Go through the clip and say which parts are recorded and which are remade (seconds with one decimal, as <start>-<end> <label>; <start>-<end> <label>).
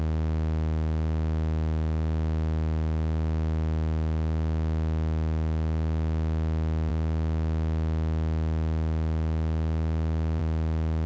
0.0-11.1 recorded